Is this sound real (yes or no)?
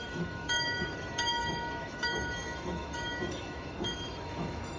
no